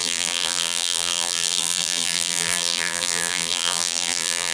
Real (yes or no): no